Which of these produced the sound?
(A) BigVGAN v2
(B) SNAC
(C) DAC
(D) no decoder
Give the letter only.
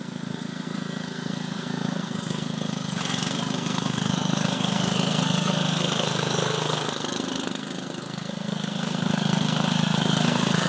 B